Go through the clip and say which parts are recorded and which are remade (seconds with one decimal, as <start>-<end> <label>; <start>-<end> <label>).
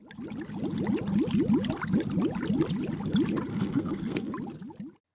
0.0-3.5 recorded; 3.5-4.3 remade; 4.3-5.1 recorded